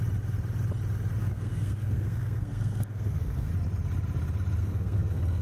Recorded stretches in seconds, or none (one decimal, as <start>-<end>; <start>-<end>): 0.0-1.2; 3.5-4.6